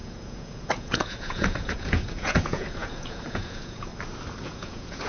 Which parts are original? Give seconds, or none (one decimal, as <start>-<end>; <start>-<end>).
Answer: 3.9-4.4